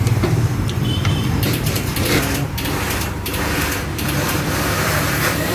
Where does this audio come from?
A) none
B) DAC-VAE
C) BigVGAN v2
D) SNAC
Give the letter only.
C